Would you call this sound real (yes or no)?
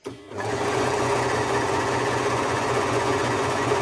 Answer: no